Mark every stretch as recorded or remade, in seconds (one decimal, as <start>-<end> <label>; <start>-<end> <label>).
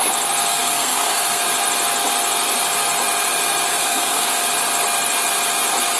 0.0-0.5 recorded; 0.5-1.4 remade; 1.4-3.7 recorded; 3.7-4.4 remade; 4.4-6.0 recorded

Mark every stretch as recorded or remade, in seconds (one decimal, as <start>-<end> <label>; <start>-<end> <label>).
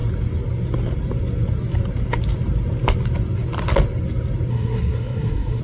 0.0-4.5 recorded; 4.5-5.6 remade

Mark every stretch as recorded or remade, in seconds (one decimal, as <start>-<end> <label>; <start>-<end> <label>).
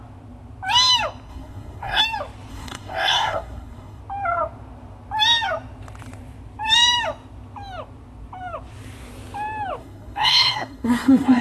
0.0-1.3 recorded; 1.3-2.0 remade; 2.0-2.5 recorded; 2.5-4.0 remade; 4.0-9.8 recorded; 9.8-11.4 remade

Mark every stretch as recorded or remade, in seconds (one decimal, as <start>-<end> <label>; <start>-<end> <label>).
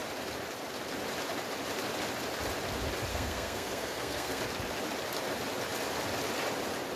0.0-3.1 recorded; 3.1-4.4 remade; 4.4-7.0 recorded